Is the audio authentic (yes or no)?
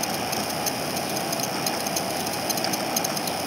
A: yes